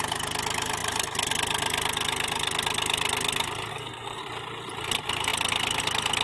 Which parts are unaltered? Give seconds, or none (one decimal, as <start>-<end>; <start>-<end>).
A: 0.0-3.7; 4.2-6.2